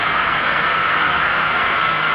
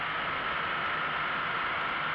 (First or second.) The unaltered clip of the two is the second